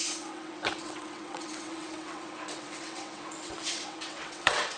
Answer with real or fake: fake